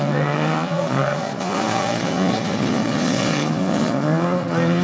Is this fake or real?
fake